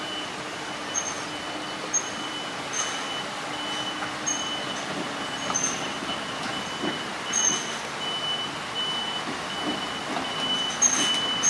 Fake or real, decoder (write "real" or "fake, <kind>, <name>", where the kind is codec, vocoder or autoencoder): real